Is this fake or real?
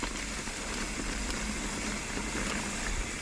real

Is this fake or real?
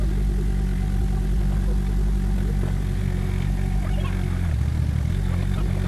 real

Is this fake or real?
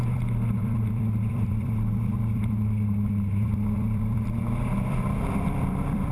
fake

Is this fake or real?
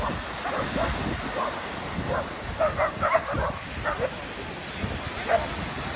real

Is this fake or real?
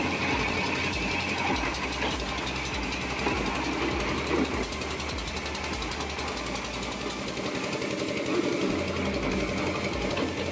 real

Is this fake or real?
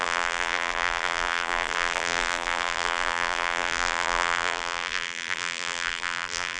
fake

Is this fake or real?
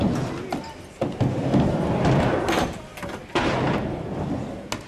real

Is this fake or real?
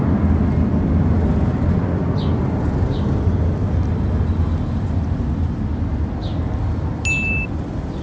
real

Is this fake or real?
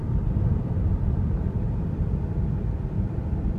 fake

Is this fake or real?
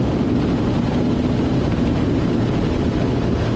fake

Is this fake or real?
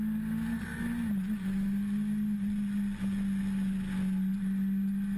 real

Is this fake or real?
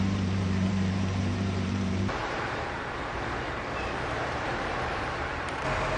fake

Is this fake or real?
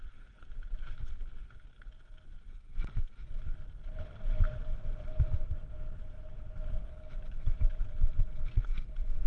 real